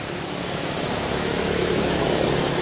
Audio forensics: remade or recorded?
remade